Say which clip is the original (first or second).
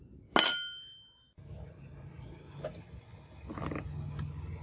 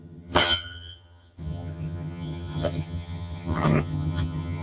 first